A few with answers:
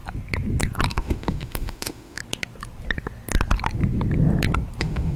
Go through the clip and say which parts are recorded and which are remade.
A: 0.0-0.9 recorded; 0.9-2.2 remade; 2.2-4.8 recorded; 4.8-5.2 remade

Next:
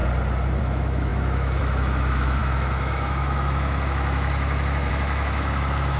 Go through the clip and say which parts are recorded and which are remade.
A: 0.0-0.6 recorded; 0.6-6.0 remade

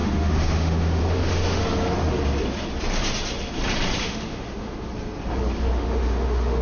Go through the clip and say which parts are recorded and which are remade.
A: 0.0-1.6 remade; 1.6-4.0 recorded; 4.0-4.9 remade; 4.9-5.7 recorded; 5.7-6.6 remade